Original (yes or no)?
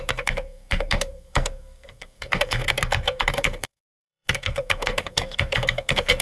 no